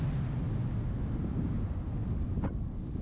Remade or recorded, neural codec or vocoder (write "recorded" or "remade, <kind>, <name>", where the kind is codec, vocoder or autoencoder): recorded